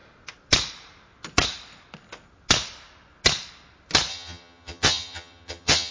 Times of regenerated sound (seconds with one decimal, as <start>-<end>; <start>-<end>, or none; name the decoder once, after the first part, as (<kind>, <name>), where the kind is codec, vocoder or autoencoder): 4.1-5.9 (vocoder, HiFi-GAN)